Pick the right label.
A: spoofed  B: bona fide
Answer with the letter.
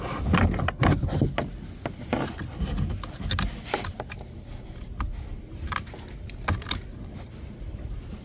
B